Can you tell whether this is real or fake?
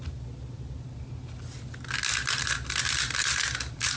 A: real